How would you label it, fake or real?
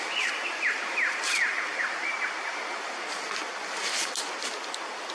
real